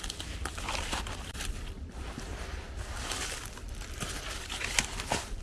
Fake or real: real